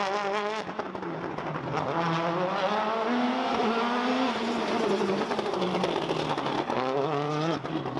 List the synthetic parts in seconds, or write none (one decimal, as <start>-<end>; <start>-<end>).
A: none

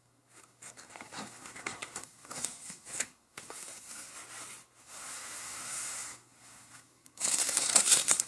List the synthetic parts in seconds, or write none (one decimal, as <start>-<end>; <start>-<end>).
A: 0.0-4.1; 4.8-8.3

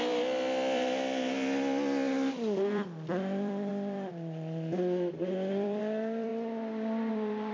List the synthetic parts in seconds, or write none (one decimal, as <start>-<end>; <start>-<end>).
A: 0.0-6.3; 7.1-7.5

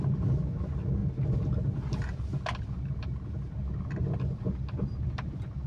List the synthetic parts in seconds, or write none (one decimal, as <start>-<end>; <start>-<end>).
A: none

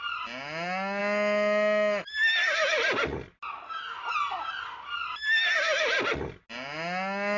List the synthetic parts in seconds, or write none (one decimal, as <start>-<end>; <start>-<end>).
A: none

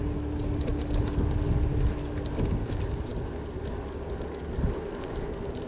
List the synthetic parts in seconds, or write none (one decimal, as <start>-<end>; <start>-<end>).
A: none

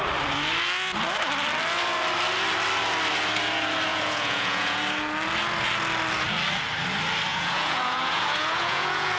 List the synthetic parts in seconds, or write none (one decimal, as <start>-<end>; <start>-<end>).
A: 3.9-4.8; 7.3-9.2